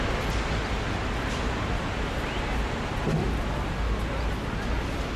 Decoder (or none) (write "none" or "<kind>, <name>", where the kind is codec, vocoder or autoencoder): none